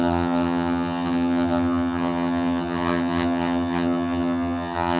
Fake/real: fake